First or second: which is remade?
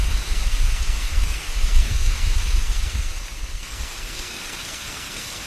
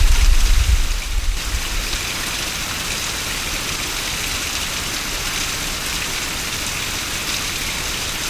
first